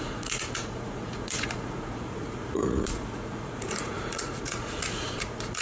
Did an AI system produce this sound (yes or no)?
yes